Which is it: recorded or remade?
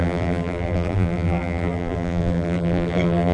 remade